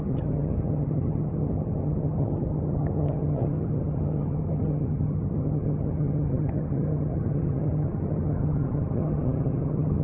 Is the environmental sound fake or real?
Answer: fake